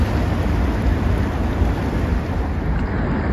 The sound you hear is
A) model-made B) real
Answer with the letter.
B